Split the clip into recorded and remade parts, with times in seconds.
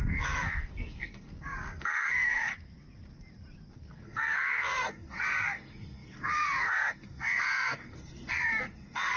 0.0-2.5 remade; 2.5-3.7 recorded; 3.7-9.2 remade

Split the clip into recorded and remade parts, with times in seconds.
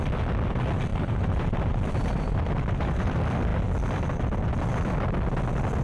0.0-0.9 recorded; 0.9-3.1 remade; 3.1-5.8 recorded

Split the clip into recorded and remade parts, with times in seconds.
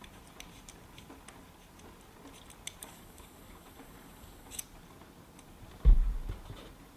0.0-2.8 recorded; 2.8-4.6 remade; 4.6-7.0 recorded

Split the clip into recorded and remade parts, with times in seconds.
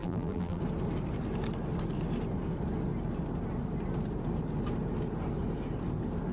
0.0-0.6 remade; 0.6-6.3 recorded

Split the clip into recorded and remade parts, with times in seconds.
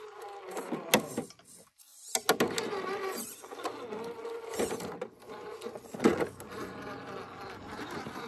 0.0-8.3 recorded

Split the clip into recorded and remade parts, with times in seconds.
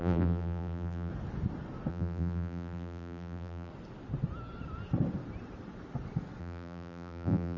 0.0-1.1 remade; 1.1-1.9 recorded; 1.9-3.7 remade; 3.7-6.4 recorded; 6.4-7.6 remade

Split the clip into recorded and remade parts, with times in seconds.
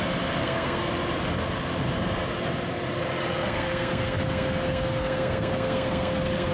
0.0-0.4 recorded; 0.4-0.9 remade; 0.9-3.4 recorded; 3.4-6.5 remade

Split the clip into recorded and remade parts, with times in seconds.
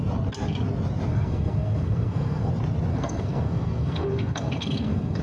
0.0-1.1 recorded; 1.1-2.5 remade; 2.5-2.9 recorded; 2.9-5.2 remade